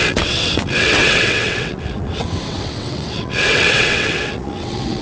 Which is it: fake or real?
fake